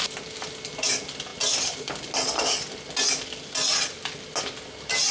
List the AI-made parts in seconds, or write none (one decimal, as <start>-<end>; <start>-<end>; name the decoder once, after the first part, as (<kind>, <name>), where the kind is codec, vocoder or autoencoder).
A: none